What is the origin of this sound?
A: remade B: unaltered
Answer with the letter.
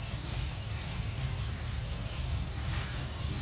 A